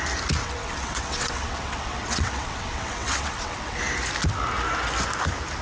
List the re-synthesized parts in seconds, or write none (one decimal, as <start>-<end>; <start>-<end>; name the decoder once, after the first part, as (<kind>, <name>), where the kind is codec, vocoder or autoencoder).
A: 0.4-3.8 (vocoder, WaveNeXt)